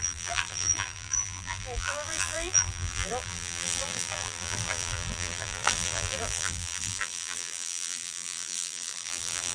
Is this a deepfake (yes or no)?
yes